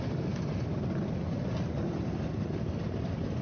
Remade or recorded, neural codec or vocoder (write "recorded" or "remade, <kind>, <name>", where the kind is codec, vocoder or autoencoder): recorded